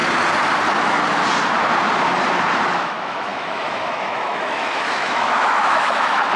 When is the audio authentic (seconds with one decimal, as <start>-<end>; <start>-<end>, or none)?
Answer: 0.0-2.7